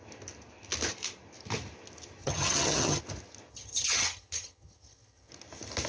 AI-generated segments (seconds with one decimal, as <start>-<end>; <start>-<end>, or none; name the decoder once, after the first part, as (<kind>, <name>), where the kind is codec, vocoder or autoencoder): 2.2-3.0 (vocoder, HiFi-GAN); 3.5-5.3